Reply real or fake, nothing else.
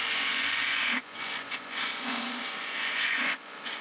fake